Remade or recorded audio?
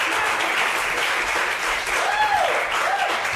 recorded